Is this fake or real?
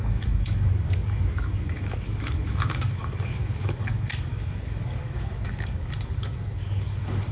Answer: fake